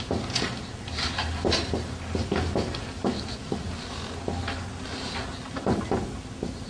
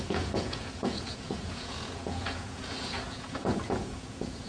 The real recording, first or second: first